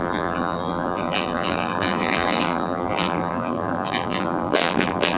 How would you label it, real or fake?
fake